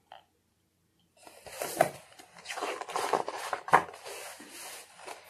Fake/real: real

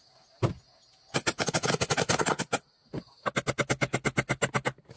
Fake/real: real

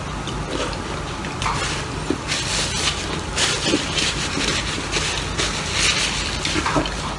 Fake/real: real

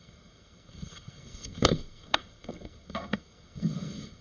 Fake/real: fake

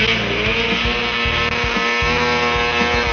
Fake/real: real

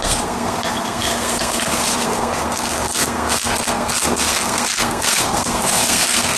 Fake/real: fake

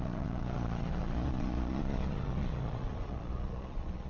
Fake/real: fake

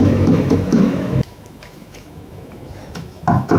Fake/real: fake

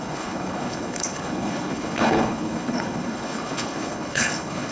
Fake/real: fake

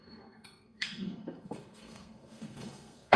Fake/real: fake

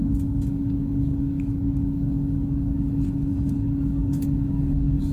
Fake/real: fake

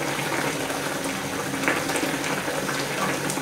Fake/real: real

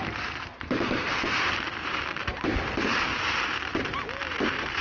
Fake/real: fake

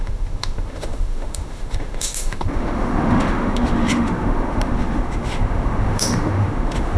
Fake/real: fake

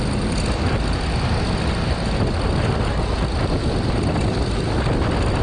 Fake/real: real